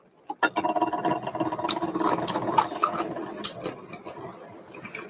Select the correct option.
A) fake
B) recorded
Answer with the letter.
B